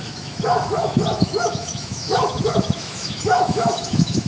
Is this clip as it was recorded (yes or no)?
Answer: no